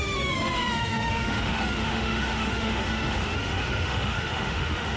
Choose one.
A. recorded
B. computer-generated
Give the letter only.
B